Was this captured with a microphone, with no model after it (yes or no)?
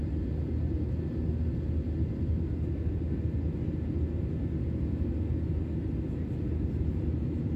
yes